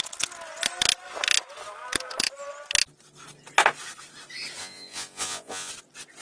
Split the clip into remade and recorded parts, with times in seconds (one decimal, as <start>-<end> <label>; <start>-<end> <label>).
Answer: 0.0-4.6 recorded; 4.6-5.7 remade; 5.7-6.2 recorded

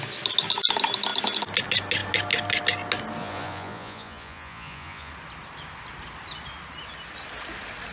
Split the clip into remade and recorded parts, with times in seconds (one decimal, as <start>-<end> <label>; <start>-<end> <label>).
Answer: 0.0-3.2 recorded; 3.2-5.1 remade; 5.1-7.9 recorded